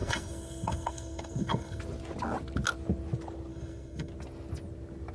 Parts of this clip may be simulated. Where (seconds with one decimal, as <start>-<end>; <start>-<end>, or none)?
0.0-1.8; 3.5-4.1